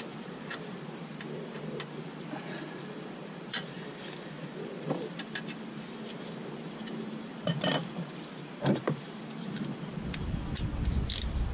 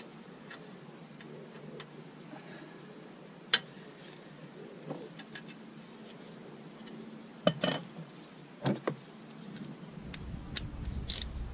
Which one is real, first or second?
second